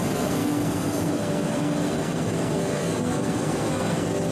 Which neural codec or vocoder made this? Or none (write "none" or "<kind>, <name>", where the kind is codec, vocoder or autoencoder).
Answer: codec, SNAC